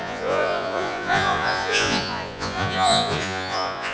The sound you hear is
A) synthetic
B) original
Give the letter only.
A